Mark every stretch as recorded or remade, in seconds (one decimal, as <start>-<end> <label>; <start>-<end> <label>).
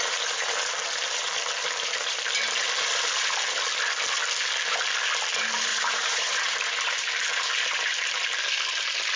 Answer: 0.0-5.7 recorded; 5.7-8.1 remade; 8.1-9.2 recorded